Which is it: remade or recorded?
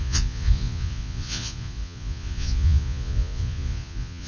remade